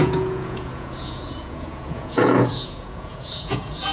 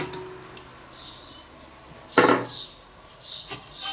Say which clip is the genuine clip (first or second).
second